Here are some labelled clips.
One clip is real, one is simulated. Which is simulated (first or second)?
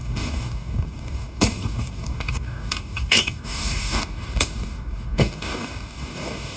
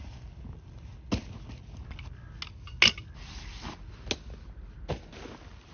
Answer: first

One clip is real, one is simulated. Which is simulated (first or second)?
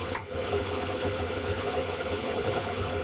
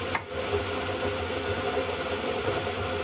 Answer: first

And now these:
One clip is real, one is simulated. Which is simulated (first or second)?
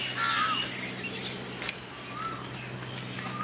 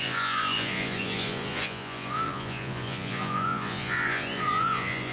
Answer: second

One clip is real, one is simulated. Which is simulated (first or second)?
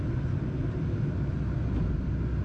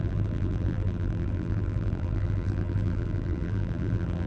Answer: second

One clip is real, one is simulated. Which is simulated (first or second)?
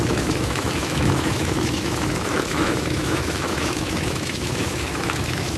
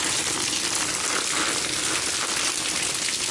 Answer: first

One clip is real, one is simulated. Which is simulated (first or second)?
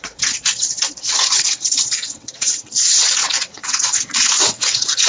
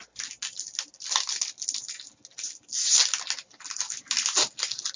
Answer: first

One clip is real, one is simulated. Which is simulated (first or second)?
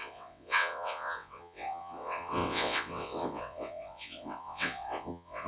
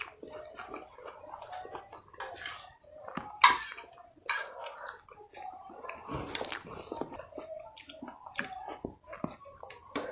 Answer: first